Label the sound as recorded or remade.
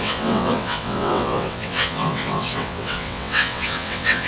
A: remade